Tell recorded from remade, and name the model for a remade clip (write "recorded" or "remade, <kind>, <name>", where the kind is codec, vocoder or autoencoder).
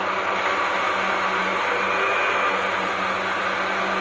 recorded